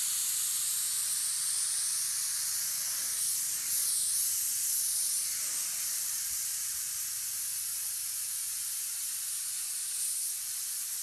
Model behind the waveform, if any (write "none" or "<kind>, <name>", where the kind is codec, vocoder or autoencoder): none